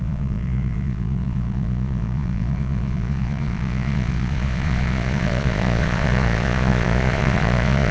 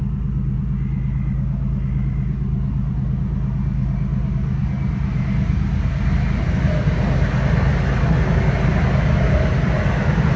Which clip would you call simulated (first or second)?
first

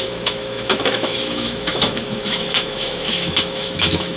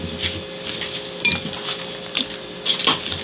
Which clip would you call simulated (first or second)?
first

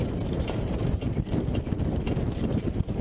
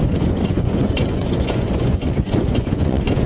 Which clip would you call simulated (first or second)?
second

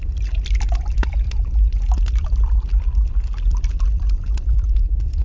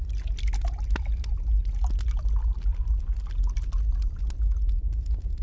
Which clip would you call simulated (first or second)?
first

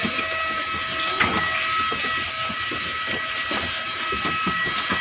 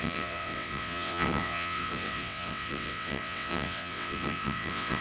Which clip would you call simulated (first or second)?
second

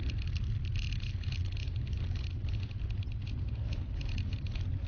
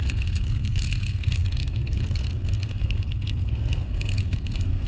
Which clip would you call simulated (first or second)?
second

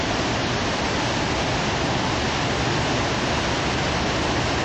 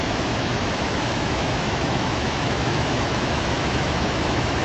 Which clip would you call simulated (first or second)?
second